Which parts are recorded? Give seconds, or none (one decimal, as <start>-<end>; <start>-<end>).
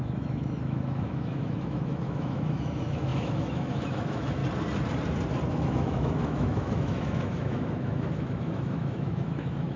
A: 4.4-5.5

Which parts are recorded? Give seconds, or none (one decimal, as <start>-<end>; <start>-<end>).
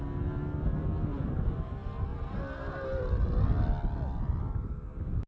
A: 0.0-1.1; 1.7-2.1; 3.4-5.3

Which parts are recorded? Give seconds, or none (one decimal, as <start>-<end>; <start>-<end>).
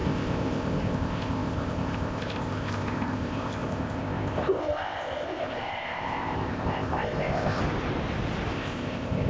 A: 7.6-8.5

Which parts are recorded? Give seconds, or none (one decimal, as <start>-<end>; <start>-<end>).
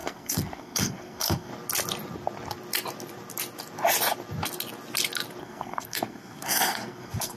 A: 1.5-5.4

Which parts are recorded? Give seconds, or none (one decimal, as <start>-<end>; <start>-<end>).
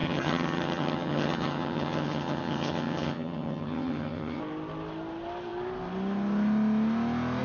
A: 4.4-7.4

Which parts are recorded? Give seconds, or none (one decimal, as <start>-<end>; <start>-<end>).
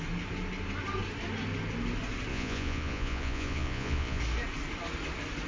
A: 0.0-2.3; 4.2-5.5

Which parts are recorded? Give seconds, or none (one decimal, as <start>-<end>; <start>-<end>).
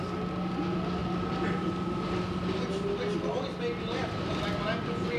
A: 0.0-5.2